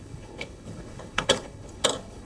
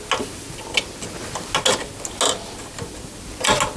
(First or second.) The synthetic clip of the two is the first